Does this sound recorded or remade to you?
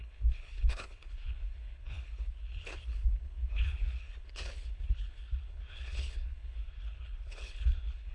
remade